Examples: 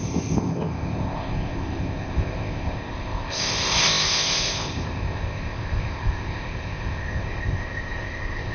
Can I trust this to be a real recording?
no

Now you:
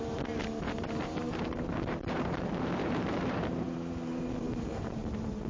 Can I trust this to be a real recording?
no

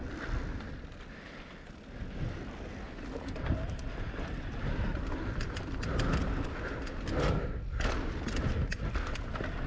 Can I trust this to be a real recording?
yes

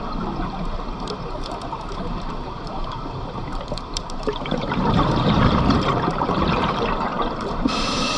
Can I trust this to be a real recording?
no